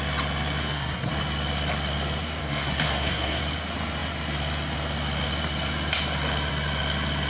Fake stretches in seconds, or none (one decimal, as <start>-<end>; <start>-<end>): 0.6-1.1; 2.4-3.4

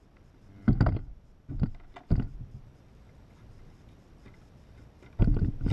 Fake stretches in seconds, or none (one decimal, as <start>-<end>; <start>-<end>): none

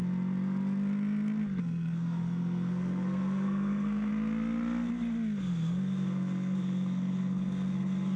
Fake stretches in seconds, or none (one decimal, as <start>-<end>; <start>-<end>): 1.6-4.1; 5.4-8.2

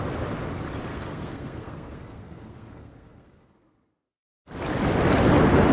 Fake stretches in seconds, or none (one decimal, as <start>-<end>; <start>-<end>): 0.9-4.3

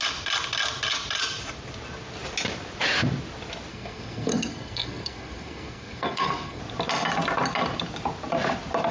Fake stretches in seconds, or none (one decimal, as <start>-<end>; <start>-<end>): 3.7-6.6

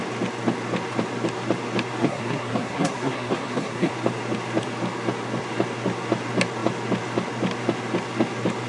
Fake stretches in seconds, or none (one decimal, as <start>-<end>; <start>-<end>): 2.0-3.9

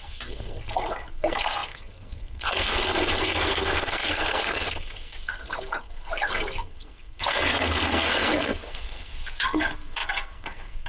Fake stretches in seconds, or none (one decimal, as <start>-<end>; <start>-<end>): 0.0-10.9

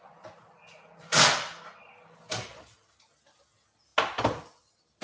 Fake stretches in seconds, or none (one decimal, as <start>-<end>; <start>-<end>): none